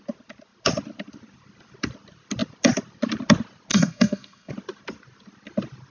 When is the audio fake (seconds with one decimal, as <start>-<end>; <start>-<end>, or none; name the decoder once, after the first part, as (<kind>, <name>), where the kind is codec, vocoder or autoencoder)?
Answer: 3.7-4.5 (codec, SNAC)